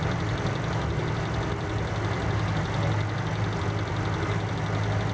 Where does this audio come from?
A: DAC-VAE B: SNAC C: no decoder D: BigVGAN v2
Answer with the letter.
C